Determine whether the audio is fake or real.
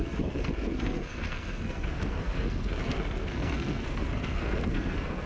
fake